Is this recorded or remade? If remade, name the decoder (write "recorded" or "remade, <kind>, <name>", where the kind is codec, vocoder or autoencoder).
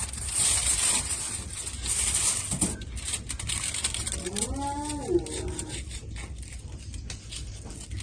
recorded